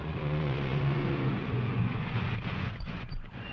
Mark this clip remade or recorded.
remade